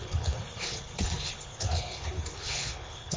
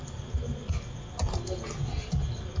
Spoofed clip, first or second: first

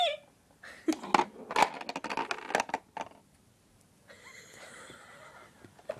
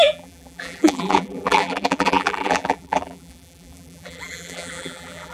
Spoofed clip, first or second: second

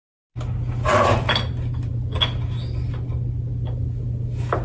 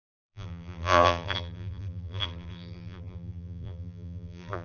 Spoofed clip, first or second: second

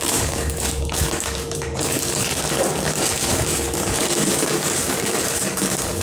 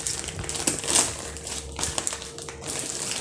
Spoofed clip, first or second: first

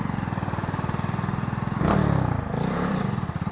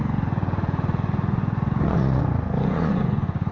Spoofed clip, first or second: second